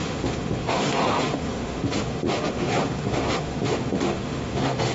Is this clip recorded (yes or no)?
no